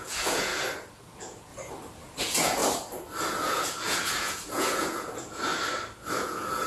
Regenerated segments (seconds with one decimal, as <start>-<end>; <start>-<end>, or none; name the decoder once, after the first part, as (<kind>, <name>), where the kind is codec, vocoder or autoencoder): 0.0-0.5 (vocoder, Vocos); 1.0-1.5; 2.2-2.6; 3.3-5.5; 6.1-6.7